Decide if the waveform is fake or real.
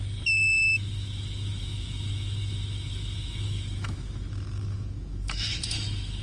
fake